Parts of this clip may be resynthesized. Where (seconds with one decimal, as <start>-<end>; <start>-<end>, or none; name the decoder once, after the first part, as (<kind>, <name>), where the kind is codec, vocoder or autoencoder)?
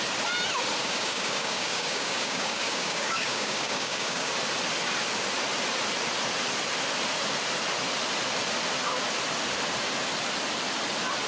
0.8-4.3 (codec, DAC)